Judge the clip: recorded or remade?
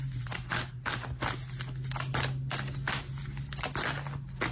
recorded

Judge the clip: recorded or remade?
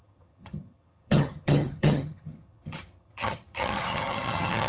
remade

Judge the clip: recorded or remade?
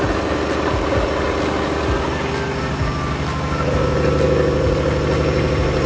recorded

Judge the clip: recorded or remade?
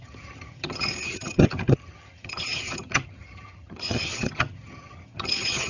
remade